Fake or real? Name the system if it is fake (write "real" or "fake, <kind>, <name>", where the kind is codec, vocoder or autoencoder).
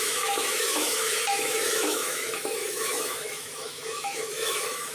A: fake, autoencoder, DAC-VAE